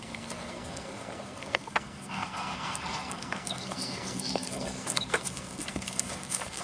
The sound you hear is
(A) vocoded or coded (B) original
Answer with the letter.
A